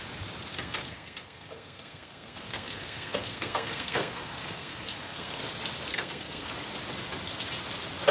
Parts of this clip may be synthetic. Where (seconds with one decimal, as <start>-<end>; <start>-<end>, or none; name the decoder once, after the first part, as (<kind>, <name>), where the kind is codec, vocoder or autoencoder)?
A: 0.5-5.4 (codec, SNAC); 5.9-6.5